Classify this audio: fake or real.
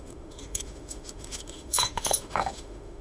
fake